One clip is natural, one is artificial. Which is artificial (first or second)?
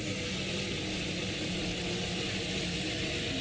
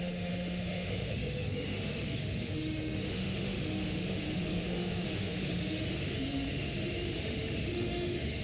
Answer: second